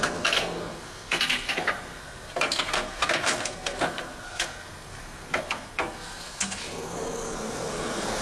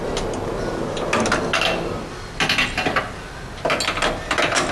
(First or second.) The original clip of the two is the second